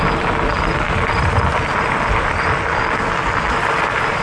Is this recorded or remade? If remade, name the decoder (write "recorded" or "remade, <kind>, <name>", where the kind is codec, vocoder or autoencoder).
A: recorded